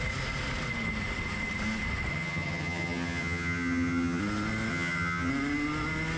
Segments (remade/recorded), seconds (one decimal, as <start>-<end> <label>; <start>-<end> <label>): 0.0-2.1 recorded; 2.1-4.2 remade; 4.2-4.7 recorded; 4.7-5.3 remade; 5.3-6.2 recorded